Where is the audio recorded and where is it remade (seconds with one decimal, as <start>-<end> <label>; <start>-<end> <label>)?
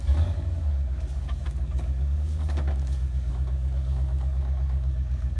0.0-5.4 remade